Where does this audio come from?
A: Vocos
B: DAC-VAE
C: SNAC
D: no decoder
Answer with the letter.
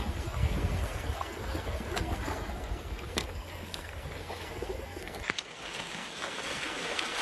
C